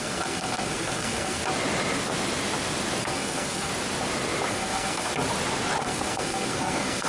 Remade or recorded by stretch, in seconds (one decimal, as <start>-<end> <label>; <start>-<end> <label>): 0.0-1.4 remade; 1.4-3.0 recorded; 3.0-3.7 remade; 3.7-4.5 recorded; 4.5-5.1 remade; 5.1-5.8 recorded; 5.8-7.1 remade